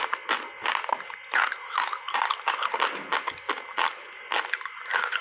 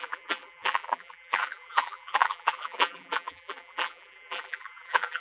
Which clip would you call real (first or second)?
first